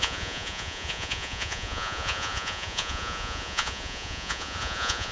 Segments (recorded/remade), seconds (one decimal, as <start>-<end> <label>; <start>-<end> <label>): 0.0-5.1 remade